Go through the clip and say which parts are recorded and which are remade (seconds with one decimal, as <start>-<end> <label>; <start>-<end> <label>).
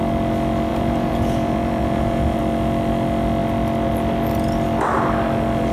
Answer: 0.0-0.7 recorded; 0.7-2.4 remade; 2.4-5.7 recorded